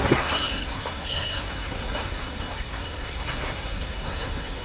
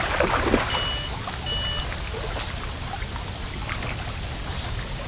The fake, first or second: first